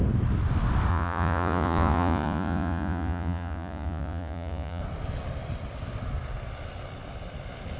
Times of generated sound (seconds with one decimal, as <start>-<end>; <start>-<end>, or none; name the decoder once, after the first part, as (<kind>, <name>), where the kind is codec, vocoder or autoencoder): 0.9-4.8 (vocoder, Vocos)